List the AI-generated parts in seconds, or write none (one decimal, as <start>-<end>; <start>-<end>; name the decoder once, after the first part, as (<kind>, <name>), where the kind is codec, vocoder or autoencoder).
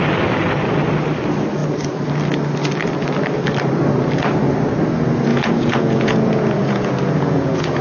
5.3-7.8 (vocoder, Vocos)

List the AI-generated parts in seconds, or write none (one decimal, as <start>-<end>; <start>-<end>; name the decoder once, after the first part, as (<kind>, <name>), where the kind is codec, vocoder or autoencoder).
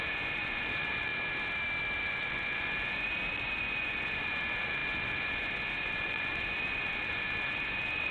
0.0-1.1 (vocoder, Vocos); 2.0-8.1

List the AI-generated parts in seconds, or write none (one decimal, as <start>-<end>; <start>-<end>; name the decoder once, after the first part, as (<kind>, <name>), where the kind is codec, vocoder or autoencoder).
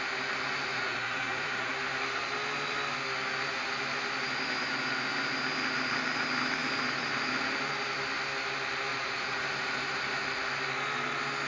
0.7-1.7 (vocoder, Vocos); 8.9-9.4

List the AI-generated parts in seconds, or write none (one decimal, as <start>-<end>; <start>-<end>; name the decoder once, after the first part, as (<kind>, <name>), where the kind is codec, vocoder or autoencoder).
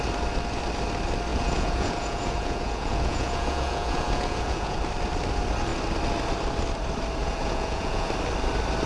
1.3-4.8 (vocoder, Vocos); 7.2-8.1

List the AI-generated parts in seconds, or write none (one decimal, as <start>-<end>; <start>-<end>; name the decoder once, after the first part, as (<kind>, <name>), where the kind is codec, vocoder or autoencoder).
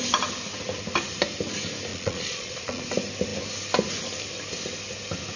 1.9-2.8 (vocoder, Vocos)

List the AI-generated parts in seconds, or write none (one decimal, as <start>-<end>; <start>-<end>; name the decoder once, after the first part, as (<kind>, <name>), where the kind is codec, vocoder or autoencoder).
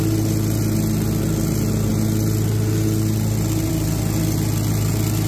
none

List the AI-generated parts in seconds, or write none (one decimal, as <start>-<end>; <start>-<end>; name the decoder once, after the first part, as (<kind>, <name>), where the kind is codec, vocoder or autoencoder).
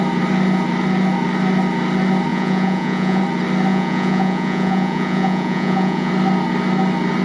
2.3-3.2 (vocoder, Vocos); 3.7-6.1